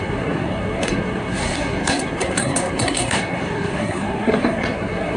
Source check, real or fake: fake